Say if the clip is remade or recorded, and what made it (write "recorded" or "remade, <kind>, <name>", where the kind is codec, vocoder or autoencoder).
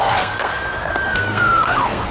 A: remade, codec, SNAC